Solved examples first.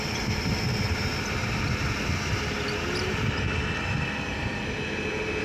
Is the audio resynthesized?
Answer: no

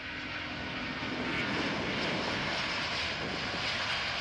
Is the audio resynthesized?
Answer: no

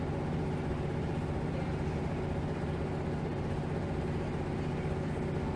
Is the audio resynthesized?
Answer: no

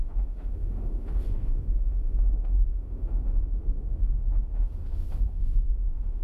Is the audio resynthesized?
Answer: yes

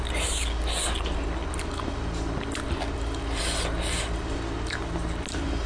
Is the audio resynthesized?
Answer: no